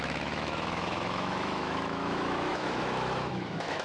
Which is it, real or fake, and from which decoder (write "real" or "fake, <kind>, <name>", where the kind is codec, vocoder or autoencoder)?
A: fake, autoencoder, DAC-VAE